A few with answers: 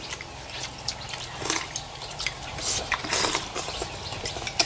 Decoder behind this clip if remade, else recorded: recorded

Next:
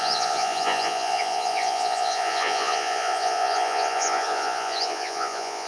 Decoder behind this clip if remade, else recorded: remade, vocoder, Vocos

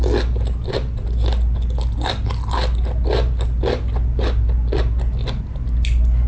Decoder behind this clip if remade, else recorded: recorded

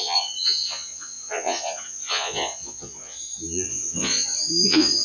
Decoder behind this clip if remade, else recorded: remade, vocoder, Vocos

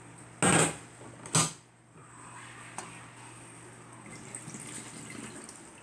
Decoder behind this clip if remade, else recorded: recorded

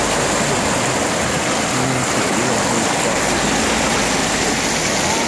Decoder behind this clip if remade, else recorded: recorded